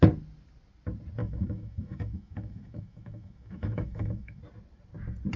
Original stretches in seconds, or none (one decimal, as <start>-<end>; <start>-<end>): 0.0-1.2; 4.4-5.4